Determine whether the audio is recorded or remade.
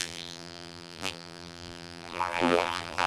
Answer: remade